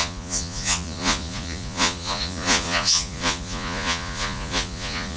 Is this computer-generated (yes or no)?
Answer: yes